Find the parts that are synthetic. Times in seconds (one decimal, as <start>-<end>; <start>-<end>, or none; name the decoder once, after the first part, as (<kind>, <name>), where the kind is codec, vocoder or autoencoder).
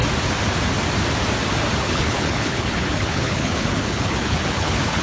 1.8-5.0 (codec, HILCodec)